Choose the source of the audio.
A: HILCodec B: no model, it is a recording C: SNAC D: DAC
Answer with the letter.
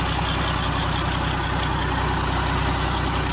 B